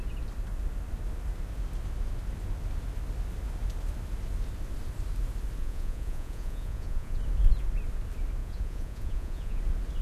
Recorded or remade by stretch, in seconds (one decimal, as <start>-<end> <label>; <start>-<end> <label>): 0.0-5.6 recorded; 5.6-7.2 remade; 7.2-8.4 recorded; 8.4-9.6 remade; 9.6-10.0 recorded